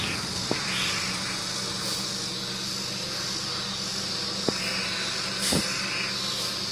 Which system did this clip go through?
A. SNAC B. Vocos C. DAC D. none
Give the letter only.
D